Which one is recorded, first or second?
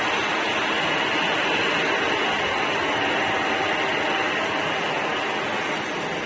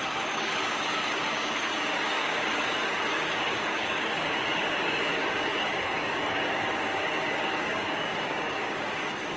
first